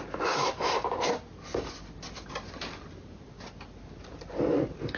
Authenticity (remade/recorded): recorded